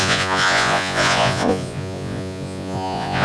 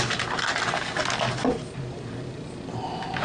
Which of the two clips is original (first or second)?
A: second